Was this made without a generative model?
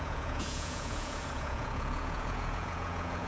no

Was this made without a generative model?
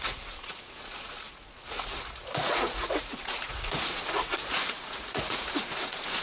no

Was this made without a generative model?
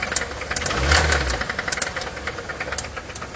yes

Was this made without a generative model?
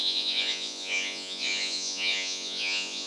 no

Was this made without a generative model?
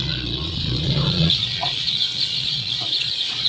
no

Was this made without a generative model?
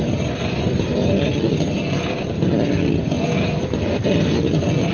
yes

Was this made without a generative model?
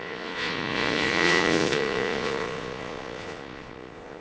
no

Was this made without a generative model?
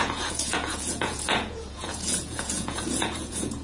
no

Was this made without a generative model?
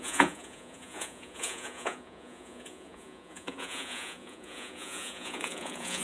no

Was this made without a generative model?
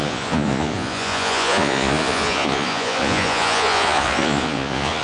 no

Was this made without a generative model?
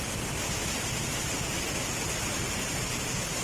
yes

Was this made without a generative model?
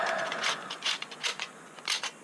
no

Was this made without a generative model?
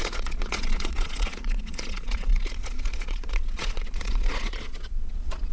no